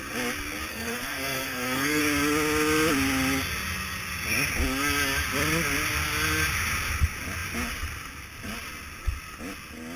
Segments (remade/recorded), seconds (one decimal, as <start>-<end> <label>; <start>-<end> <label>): 0.0-0.7 recorded; 0.7-2.0 remade; 2.0-10.0 recorded